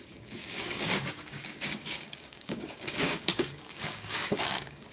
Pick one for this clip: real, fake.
fake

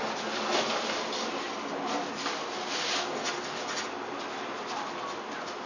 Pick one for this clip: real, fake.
real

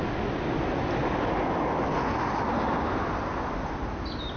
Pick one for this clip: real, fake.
real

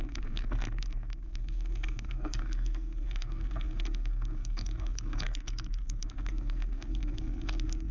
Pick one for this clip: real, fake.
fake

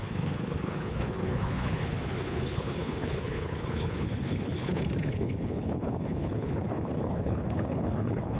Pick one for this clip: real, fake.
fake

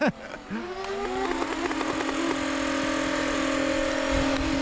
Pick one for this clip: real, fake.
real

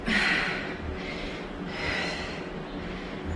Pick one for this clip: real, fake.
real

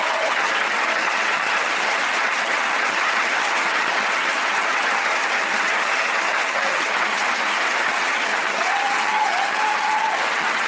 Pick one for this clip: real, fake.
fake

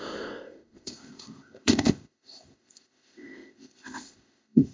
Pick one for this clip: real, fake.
fake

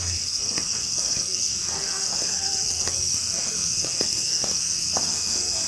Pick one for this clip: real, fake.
fake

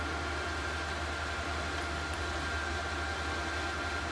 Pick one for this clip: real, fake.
real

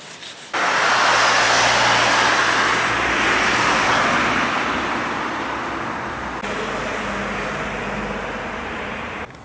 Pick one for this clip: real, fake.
real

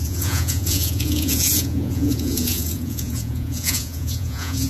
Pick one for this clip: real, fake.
fake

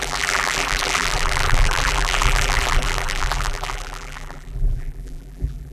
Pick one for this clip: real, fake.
fake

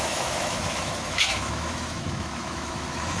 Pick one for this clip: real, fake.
fake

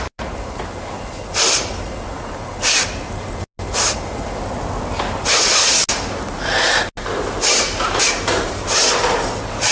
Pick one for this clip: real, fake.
real